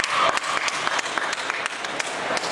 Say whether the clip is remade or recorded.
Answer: recorded